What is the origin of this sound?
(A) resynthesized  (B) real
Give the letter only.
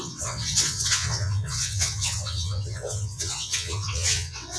A